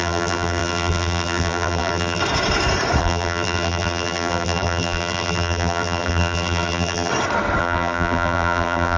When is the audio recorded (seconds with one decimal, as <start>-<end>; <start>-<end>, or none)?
2.2-3.0; 7.1-7.6